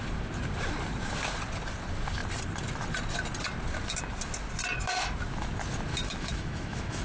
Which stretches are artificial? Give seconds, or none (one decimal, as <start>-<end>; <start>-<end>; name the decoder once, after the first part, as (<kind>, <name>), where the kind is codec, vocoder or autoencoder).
5.9-7.0 (autoencoder, DAC-VAE)